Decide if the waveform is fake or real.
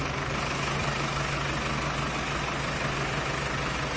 real